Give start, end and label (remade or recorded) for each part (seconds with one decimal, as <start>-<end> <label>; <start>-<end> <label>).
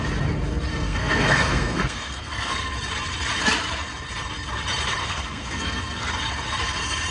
0.0-0.7 recorded; 0.7-2.7 remade; 2.7-5.0 recorded; 5.0-6.1 remade; 6.1-7.1 recorded